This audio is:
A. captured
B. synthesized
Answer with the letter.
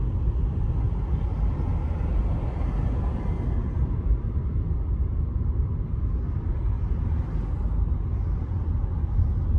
A